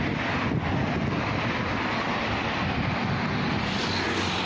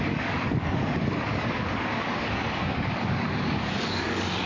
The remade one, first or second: second